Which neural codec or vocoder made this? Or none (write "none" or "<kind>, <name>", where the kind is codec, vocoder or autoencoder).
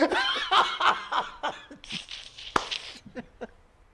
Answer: none